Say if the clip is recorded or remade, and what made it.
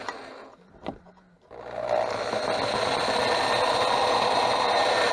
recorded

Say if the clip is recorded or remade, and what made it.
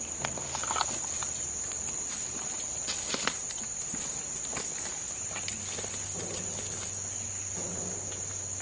recorded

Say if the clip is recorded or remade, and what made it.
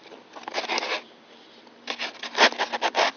recorded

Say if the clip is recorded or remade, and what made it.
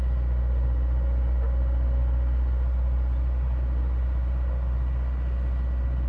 recorded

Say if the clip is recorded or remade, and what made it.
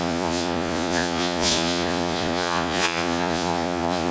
remade, vocoder, Vocos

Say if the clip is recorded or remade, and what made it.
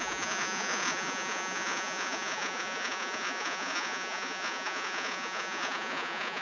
remade, vocoder, Vocos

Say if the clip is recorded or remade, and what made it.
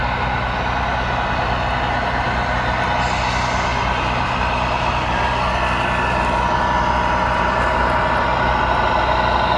recorded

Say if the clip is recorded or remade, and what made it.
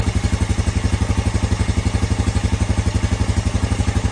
recorded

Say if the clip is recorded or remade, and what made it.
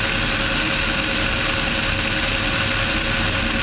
recorded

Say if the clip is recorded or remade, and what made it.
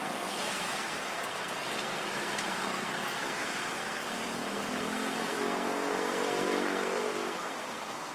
remade, codec, SNAC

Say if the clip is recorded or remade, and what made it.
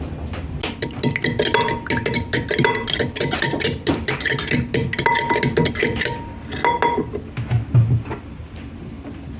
recorded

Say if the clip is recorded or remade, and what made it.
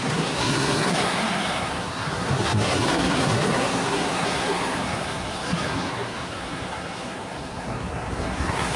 remade, codec, SNAC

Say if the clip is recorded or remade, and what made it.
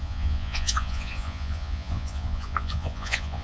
remade, vocoder, Vocos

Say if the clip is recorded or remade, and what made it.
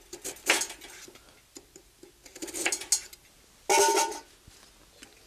recorded